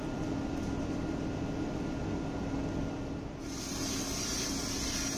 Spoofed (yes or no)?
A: no